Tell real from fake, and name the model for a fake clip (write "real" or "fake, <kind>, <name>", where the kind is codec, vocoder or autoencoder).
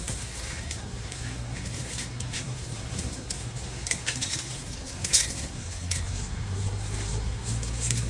fake, codec, SNAC